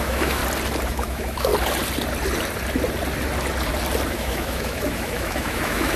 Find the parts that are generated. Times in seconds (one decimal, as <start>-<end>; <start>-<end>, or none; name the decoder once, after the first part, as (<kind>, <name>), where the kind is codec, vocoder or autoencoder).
0.0-0.4 (autoencoder, DAC-VAE); 0.9-1.5; 4.1-6.0